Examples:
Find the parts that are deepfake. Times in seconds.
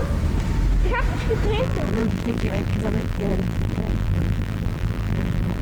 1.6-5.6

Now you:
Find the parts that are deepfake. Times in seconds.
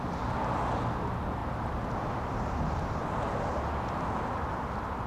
none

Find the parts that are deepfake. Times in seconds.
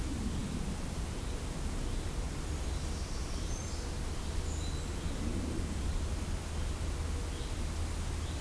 5.3-6.1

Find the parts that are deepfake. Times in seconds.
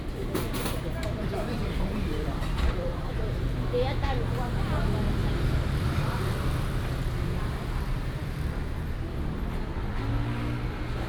1.6-3.3; 5.2-8.5